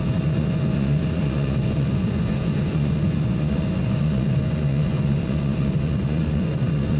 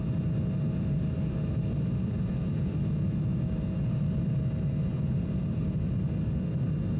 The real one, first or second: second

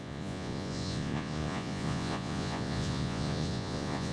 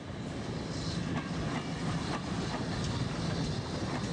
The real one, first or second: second